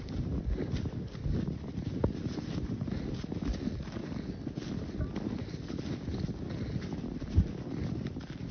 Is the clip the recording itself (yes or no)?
yes